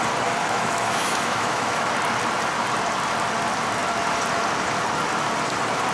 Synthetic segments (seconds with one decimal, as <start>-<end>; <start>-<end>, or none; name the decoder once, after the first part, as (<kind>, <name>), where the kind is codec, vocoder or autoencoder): 0.4-1.9 (autoencoder, DAC-VAE)